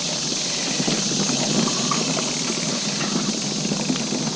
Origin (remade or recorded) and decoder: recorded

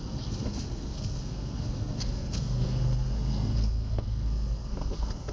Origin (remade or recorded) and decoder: remade, codec, SNAC